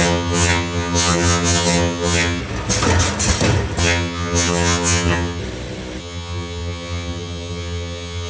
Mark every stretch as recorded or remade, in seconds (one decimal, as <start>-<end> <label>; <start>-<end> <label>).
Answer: 0.0-2.4 remade; 2.4-3.8 recorded; 3.8-5.4 remade; 5.4-6.0 recorded; 6.0-8.3 remade